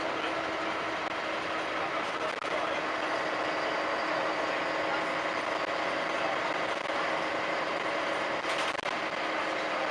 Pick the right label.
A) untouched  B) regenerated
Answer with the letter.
A